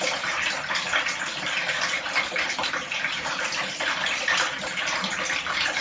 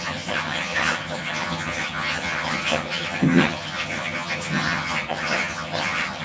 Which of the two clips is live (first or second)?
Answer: first